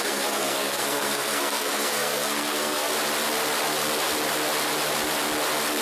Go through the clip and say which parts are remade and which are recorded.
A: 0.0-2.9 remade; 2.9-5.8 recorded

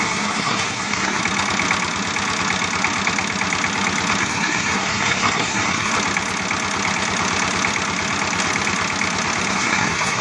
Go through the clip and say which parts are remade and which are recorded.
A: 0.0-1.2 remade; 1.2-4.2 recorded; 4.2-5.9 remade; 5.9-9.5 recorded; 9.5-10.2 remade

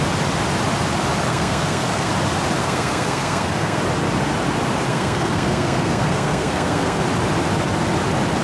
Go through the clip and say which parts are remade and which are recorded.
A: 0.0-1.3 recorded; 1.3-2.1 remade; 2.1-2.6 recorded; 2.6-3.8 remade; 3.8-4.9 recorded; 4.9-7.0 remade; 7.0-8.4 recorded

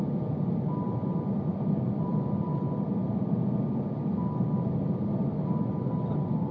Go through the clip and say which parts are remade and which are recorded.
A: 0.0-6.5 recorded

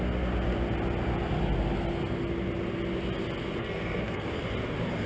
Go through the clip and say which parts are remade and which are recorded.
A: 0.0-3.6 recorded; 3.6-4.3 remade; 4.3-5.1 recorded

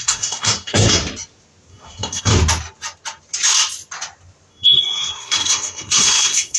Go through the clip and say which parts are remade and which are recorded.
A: 0.0-1.0 remade; 1.0-1.7 recorded; 1.7-2.3 remade; 2.3-4.5 recorded; 4.5-6.6 remade

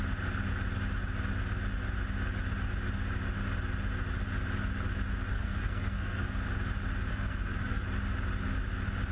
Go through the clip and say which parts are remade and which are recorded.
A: 0.0-5.3 recorded; 5.3-6.6 remade; 6.6-7.1 recorded; 7.1-7.8 remade; 7.8-9.1 recorded